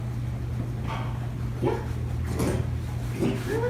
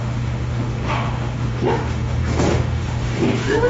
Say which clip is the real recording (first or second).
first